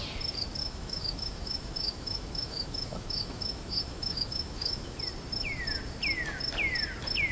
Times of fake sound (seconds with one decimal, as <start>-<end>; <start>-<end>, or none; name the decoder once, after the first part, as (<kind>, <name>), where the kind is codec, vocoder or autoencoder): 0.6-5.0 (autoencoder, DAC-VAE)